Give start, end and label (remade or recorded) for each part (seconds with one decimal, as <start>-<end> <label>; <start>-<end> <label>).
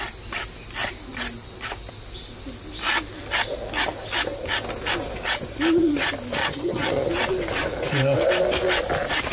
0.0-6.4 recorded; 6.4-7.1 remade; 7.1-9.3 recorded